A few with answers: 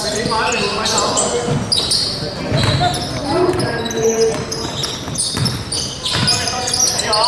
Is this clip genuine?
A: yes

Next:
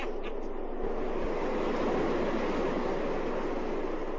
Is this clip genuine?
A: yes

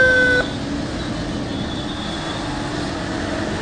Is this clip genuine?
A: yes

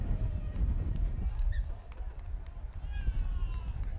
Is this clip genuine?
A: no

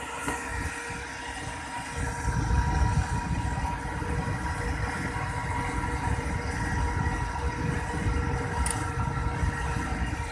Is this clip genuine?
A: yes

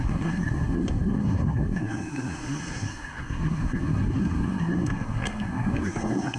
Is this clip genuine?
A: no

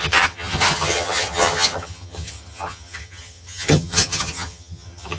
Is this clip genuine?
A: no